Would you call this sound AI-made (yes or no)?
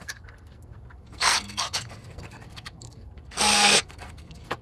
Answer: yes